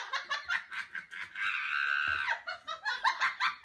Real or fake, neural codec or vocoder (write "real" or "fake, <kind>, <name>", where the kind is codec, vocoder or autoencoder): real